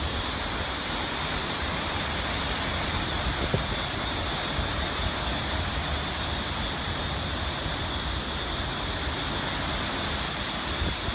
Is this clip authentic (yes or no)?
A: yes